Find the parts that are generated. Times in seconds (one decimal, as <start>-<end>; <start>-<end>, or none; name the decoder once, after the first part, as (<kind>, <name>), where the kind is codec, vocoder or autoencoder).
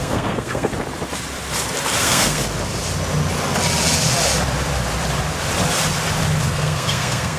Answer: 0.0-0.7 (codec, SNAC); 2.0-2.4; 6.4-7.4